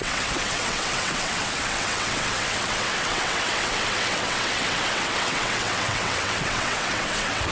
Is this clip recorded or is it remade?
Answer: remade